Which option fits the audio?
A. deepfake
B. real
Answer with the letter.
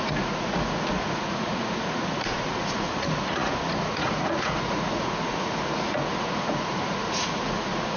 A